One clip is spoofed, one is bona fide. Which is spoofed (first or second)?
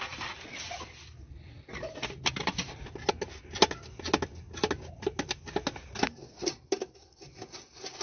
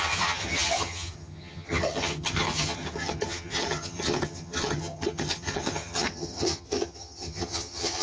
second